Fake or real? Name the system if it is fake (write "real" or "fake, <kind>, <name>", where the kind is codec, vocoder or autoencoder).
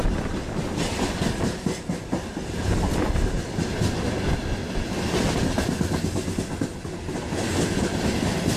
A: real